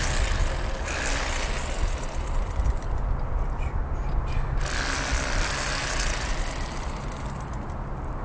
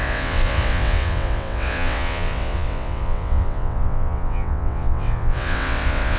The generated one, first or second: second